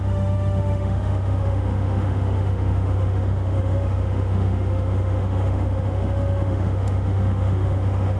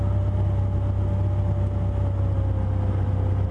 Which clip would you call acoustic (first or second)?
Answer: second